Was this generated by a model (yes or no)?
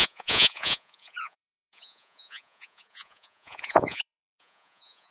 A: yes